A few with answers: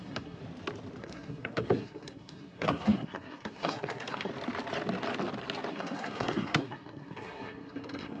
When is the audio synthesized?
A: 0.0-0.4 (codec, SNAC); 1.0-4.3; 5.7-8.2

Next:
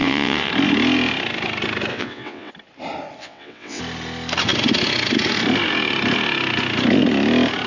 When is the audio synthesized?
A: 0.0-0.5 (vocoder, WaveNeXt); 1.9-2.5; 3.2-3.8

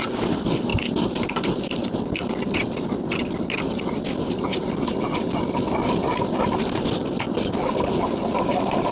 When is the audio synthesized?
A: 0.0-7.0 (vocoder, BigVGAN v2); 8.0-8.9